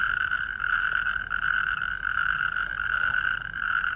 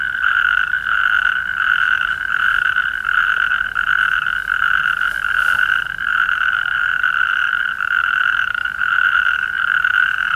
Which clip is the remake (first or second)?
second